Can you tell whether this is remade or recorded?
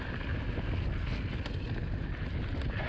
recorded